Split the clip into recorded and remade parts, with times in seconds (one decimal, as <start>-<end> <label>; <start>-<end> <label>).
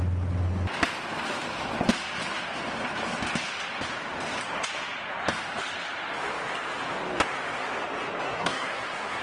0.0-8.2 recorded; 8.2-9.2 remade